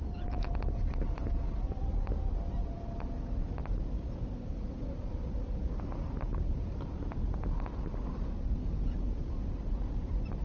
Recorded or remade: recorded